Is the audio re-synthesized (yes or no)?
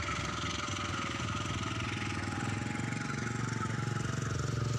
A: no